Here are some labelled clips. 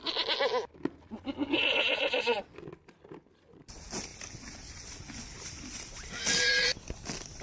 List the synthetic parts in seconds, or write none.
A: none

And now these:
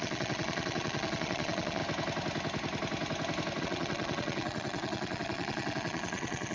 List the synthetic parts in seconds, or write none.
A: 0.0-1.8 (vocoder, Vocos); 3.6-6.5

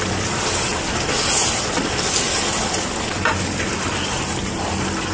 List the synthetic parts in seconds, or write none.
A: 0.0-0.7 (vocoder, BigVGAN v2); 3.7-5.1